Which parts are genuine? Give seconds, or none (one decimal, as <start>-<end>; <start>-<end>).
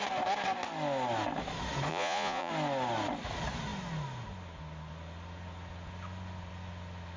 0.0-1.9; 2.5-7.2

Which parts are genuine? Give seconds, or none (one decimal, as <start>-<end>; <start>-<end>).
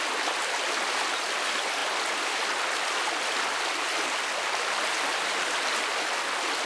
0.0-6.7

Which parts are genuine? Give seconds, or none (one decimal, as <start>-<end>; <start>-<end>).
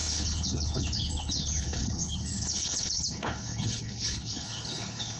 none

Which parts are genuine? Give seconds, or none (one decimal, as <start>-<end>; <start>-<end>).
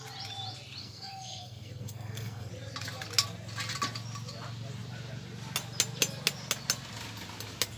0.0-0.8; 2.5-7.8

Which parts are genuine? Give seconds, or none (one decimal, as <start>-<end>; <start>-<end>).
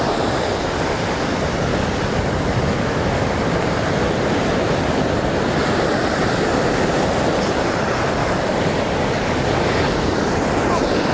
0.0-1.7; 3.4-8.2; 10.3-11.1